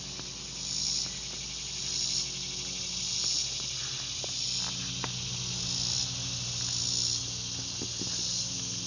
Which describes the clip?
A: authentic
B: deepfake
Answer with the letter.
A